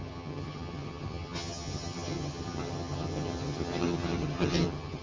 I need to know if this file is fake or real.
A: fake